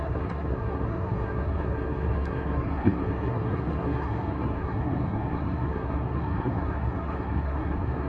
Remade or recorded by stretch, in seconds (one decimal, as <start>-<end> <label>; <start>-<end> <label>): 0.0-8.1 remade